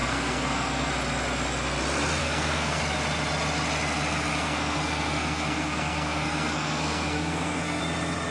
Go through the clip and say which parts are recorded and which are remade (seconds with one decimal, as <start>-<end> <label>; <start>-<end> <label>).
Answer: 0.0-0.9 remade; 0.9-2.2 recorded; 2.2-2.8 remade; 2.8-4.3 recorded; 4.3-7.8 remade; 7.8-8.3 recorded